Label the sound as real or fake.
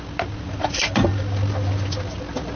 fake